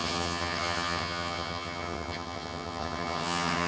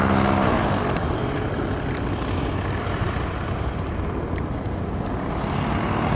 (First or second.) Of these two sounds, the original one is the second